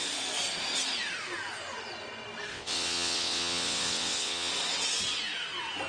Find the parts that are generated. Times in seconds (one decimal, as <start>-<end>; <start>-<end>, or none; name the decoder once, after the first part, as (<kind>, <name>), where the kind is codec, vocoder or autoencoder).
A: 2.5-4.5 (vocoder, WaveNeXt)